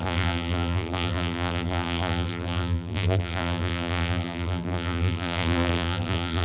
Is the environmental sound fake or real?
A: fake